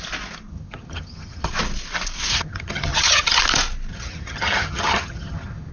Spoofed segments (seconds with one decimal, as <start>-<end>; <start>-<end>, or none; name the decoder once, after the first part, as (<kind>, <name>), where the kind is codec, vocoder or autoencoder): 0.5-1.5 (vocoder, HiFi-GAN); 2.3-3.4; 3.9-5.7